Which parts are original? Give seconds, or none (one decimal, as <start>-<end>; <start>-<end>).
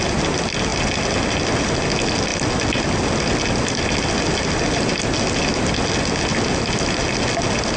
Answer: 0.0-7.8